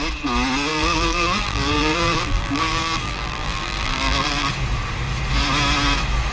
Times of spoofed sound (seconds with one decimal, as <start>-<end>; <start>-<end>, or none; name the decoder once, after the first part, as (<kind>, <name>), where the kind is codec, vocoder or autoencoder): 0.7-4.5 (vocoder, BigVGAN v2)